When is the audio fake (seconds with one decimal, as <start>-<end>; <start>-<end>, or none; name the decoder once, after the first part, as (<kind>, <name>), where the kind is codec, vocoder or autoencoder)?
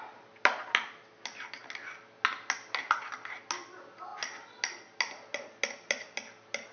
none